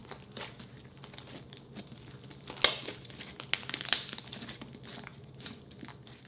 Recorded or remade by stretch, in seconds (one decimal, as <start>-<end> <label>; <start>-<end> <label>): 0.0-5.1 recorded; 5.1-5.6 remade; 5.6-6.3 recorded